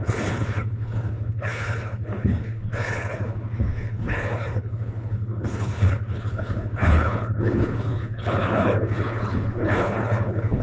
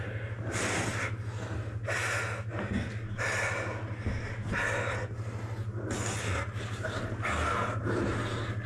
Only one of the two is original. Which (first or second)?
second